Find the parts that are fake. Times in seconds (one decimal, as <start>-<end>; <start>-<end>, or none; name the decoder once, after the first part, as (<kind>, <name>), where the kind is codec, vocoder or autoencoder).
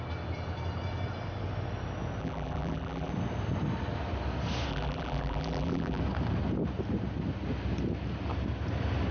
2.2-3.1 (vocoder, BigVGAN v2); 4.7-6.0